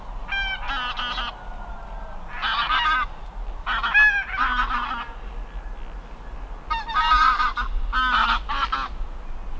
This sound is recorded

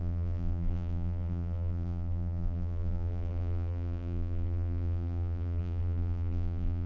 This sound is remade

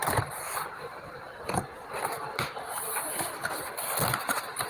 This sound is recorded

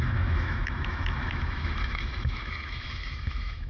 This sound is remade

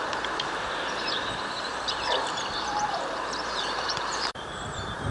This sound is remade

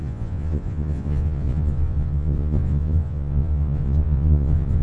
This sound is remade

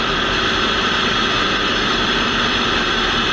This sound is recorded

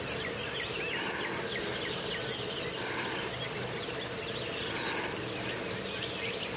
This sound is recorded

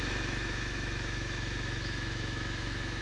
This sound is remade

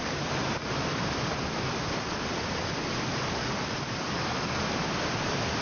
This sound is recorded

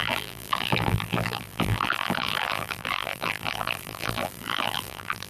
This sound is remade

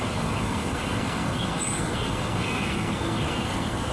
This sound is remade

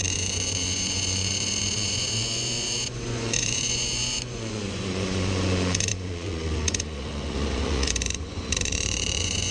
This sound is remade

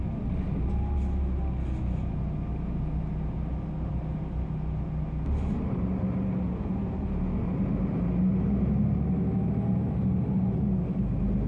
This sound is recorded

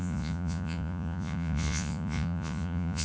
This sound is remade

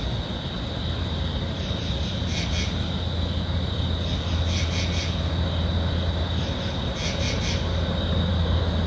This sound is recorded